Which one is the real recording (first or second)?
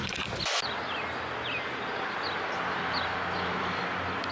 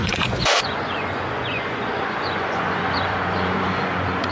first